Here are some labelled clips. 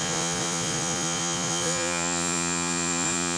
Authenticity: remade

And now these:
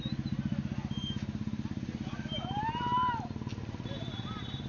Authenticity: recorded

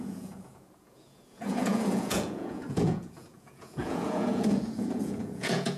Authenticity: remade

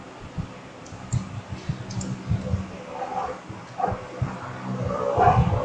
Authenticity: recorded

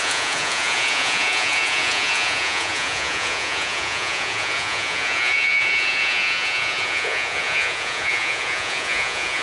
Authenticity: remade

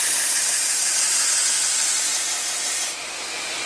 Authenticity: recorded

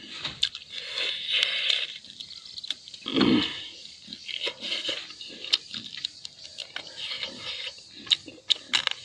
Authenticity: recorded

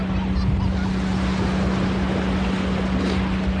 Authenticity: recorded